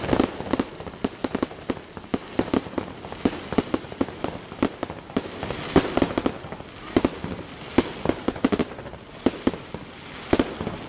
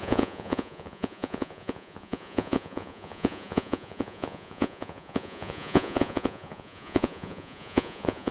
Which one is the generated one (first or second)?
second